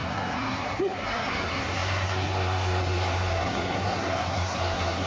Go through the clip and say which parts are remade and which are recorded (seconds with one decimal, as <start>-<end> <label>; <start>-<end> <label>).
0.0-5.1 remade

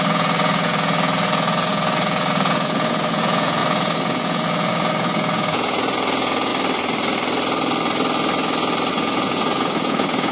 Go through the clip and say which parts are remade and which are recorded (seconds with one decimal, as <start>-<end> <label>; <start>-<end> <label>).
0.0-6.5 remade; 6.5-8.9 recorded; 8.9-10.3 remade

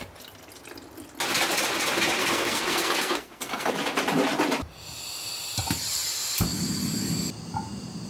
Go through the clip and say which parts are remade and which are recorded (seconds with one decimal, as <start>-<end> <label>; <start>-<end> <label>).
0.0-2.2 recorded; 2.2-3.7 remade; 3.7-8.1 recorded

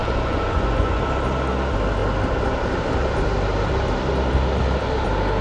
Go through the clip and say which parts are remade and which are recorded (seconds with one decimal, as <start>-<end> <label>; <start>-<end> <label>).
0.0-1.0 remade; 1.0-5.4 recorded